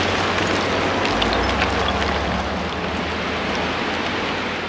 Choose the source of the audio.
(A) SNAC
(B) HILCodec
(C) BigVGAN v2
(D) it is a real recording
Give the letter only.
D